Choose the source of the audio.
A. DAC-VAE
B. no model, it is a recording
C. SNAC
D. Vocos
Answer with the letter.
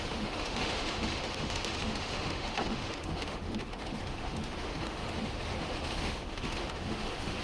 A